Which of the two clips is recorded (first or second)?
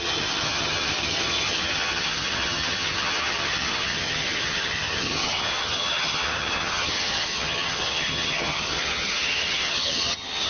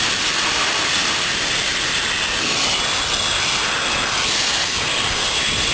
second